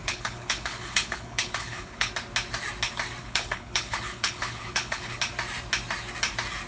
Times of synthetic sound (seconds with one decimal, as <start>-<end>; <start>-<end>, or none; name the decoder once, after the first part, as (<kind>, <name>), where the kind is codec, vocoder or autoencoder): 0.0-2.1 (codec, HILCodec); 3.2-5.2